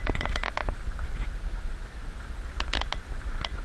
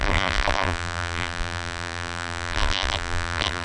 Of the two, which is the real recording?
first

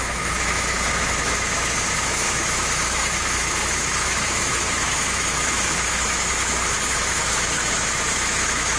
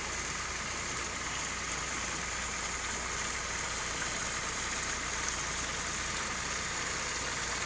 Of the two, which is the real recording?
second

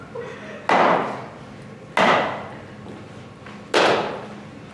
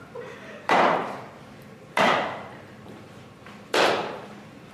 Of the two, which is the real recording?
first